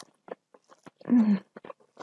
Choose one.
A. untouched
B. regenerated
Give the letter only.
A